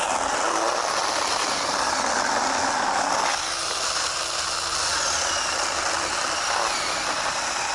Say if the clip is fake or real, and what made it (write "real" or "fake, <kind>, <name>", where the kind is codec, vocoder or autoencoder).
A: real